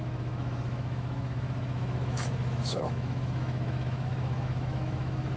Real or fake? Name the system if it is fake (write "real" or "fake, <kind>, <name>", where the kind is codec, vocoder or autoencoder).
fake, autoencoder, DAC-VAE